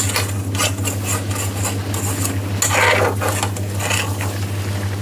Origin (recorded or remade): recorded